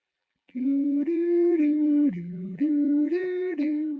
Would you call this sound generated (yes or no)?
yes